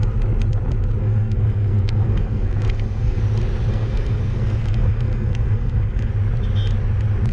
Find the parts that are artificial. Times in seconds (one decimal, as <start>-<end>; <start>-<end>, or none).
1.0-3.2; 3.7-6.1